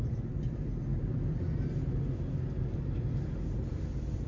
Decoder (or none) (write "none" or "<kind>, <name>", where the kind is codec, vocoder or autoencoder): none